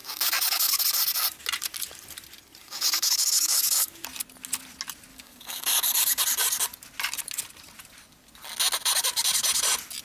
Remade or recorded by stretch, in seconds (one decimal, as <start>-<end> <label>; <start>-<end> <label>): 0.0-0.8 remade; 0.8-2.6 recorded; 2.6-3.9 remade; 3.9-5.1 recorded; 5.1-6.2 remade; 6.2-10.0 recorded